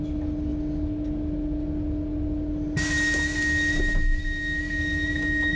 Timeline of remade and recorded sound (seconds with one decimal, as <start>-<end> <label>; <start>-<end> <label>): 0.0-5.6 recorded